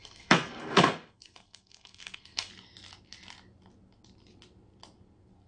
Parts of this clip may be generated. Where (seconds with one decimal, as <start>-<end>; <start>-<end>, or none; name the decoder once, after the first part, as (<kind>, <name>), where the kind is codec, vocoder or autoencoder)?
0.0-2.5 (codec, SNAC)